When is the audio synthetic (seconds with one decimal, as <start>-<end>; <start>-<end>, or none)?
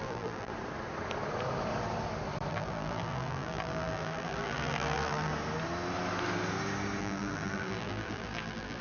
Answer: 0.0-0.5; 2.5-5.3; 7.0-8.8